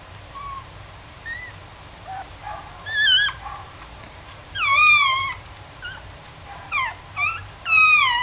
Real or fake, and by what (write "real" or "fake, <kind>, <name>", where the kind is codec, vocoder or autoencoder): fake, vocoder, BigVGAN v2